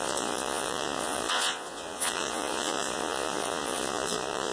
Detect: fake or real fake